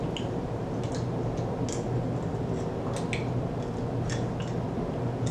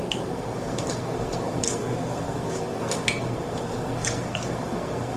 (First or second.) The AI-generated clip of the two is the second